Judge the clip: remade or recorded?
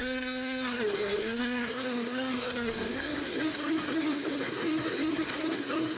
remade